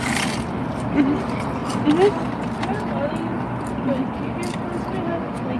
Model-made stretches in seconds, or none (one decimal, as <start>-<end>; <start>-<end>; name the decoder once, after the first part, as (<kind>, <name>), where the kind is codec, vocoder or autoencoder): none